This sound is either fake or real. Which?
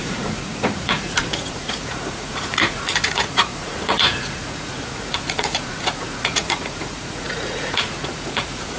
fake